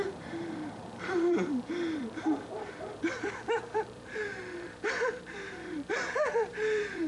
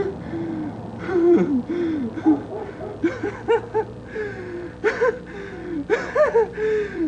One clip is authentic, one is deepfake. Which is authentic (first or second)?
second